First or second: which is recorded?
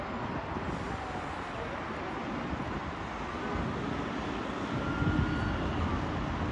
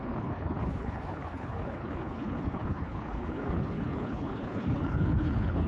first